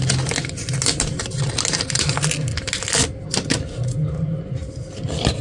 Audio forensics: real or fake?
real